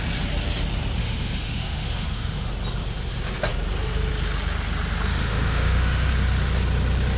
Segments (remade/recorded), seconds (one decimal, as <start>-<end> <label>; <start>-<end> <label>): 0.0-1.0 recorded; 1.0-2.5 remade; 2.5-5.1 recorded; 5.1-6.1 remade; 6.1-7.2 recorded